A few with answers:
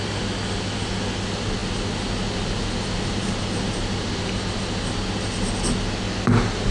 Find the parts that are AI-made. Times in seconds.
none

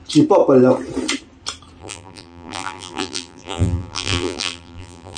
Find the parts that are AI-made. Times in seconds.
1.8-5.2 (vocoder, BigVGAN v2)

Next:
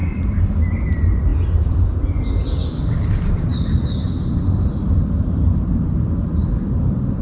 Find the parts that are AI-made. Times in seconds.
none

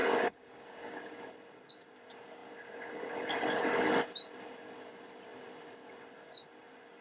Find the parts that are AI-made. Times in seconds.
0.0-1.2 (codec, DAC)

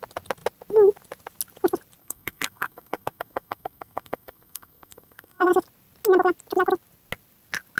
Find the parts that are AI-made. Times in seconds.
2.0-5.5 (codec, SNAC)

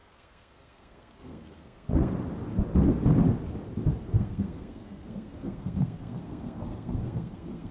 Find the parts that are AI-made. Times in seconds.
0.0-2.1 (codec, SNAC); 4.0-7.7